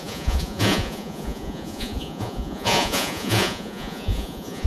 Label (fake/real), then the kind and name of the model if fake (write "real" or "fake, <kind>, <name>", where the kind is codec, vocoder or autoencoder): fake, vocoder, Vocos